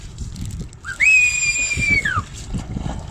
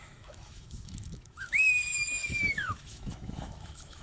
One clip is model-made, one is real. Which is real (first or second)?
first